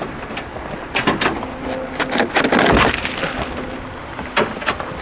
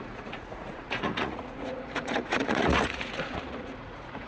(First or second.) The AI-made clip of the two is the second